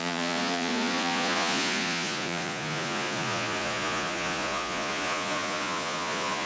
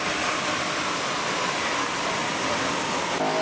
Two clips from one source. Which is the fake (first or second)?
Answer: first